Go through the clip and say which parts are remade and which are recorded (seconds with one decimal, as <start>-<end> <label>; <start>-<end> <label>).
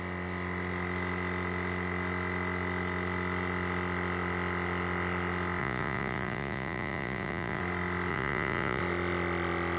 0.0-5.6 recorded; 5.6-7.6 remade; 7.6-8.1 recorded; 8.1-8.8 remade; 8.8-9.8 recorded